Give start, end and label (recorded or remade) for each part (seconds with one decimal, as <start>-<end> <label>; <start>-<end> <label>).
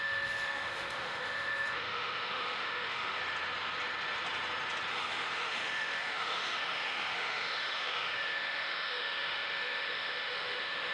0.0-3.2 remade; 3.2-4.9 recorded; 4.9-10.9 remade